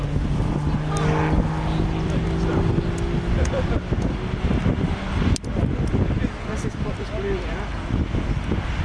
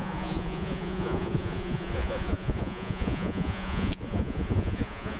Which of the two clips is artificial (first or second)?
second